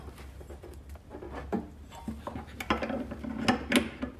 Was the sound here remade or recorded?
recorded